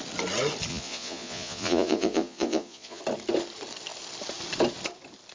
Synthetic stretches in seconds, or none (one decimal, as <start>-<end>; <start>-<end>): 0.7-3.0